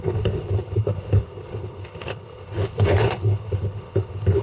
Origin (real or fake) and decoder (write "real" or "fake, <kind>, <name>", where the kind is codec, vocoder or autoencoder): fake, codec, HILCodec